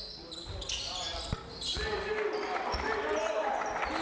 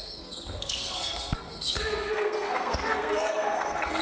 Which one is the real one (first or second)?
first